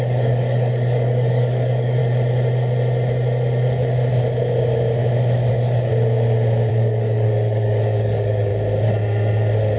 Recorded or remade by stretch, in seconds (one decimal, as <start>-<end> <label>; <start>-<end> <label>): 0.0-2.0 remade; 2.0-5.5 recorded; 5.5-5.9 remade; 5.9-6.7 recorded; 6.7-8.5 remade; 8.5-9.8 recorded